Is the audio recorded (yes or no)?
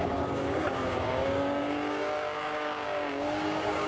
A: no